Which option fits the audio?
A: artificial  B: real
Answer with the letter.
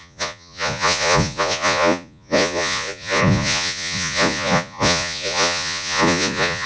A